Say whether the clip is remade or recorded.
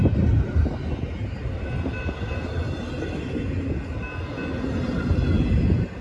recorded